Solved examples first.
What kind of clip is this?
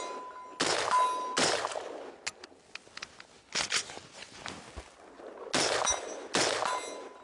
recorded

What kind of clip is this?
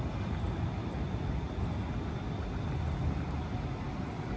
recorded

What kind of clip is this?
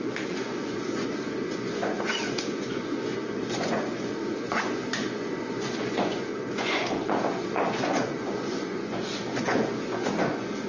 remade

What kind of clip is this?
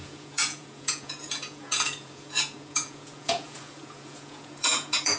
remade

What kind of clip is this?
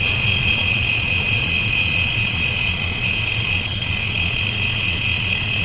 remade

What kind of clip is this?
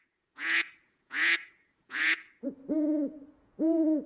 remade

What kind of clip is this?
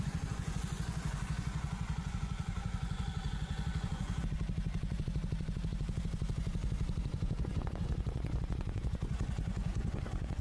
remade